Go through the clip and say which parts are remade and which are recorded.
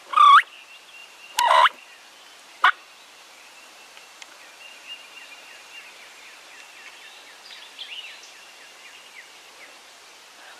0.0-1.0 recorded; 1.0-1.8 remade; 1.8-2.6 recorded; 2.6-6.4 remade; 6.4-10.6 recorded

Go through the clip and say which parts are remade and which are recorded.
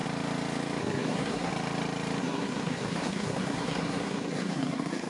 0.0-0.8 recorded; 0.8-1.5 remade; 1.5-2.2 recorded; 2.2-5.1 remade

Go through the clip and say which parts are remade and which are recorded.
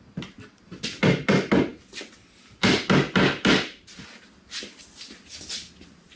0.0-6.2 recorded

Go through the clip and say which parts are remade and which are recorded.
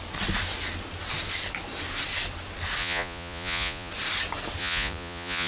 0.0-2.8 recorded; 2.8-3.9 remade; 3.9-4.6 recorded; 4.6-5.5 remade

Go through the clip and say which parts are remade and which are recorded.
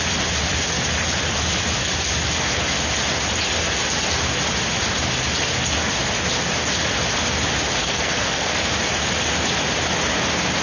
0.0-7.8 recorded; 7.8-8.7 remade; 8.7-10.6 recorded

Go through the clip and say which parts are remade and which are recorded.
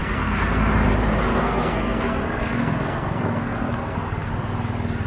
0.0-0.7 remade; 0.7-1.3 recorded; 1.3-4.3 remade; 4.3-5.1 recorded